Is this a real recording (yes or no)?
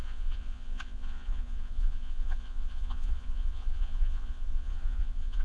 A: no